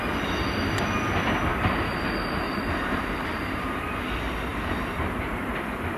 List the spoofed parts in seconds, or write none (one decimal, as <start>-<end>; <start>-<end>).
1.5-4.0; 4.5-5.5